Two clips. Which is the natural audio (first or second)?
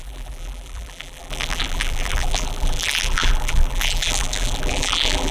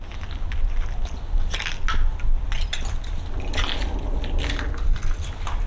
second